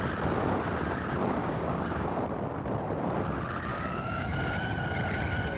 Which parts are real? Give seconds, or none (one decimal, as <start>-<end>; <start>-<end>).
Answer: 0.0-1.4; 2.2-3.7; 4.4-5.6